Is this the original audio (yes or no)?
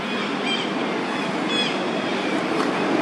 yes